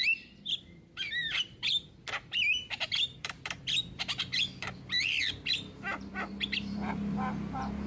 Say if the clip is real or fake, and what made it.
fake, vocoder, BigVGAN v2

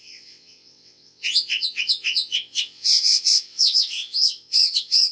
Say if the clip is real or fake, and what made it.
fake, vocoder, WaveNeXt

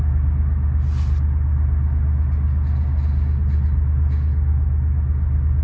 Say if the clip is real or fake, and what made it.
real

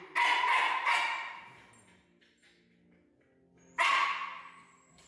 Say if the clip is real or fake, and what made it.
real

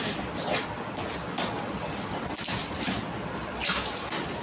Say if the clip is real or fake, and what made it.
real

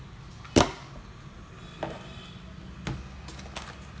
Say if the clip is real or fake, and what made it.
real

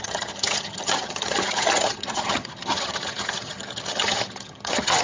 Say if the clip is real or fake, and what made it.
fake, vocoder, HiFi-GAN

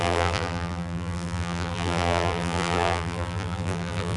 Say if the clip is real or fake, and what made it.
fake, vocoder, BigVGAN v2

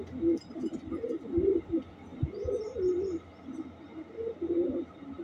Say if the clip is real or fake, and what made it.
real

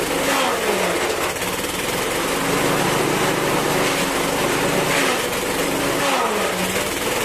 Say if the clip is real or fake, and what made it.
real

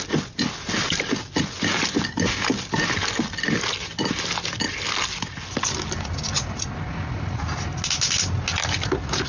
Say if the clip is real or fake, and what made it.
real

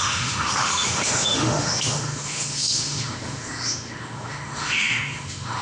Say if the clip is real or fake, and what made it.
fake, autoencoder, DAC-VAE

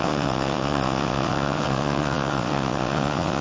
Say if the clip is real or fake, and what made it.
fake, vocoder, WaveNeXt